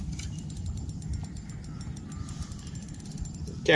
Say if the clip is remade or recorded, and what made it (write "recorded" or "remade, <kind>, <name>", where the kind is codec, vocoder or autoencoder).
recorded